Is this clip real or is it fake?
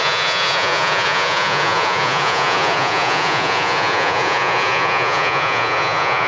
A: fake